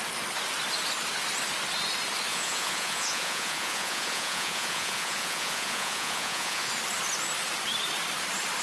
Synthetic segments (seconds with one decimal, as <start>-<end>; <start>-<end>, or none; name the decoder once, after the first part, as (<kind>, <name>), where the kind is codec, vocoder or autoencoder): 2.3-6.7 (vocoder, Vocos)